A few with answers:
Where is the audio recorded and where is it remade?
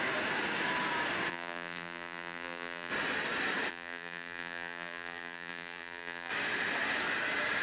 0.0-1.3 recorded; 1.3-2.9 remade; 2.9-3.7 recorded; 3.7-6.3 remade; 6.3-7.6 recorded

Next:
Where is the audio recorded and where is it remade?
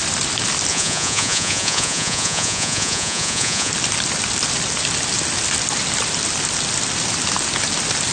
0.0-0.7 recorded; 0.7-3.7 remade; 3.7-8.1 recorded